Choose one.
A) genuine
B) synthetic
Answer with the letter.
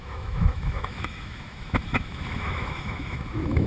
B